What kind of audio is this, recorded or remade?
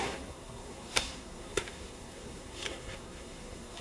remade